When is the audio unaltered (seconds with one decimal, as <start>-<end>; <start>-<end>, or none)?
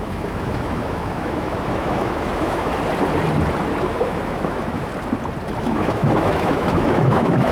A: 2.7-3.8; 4.9-5.6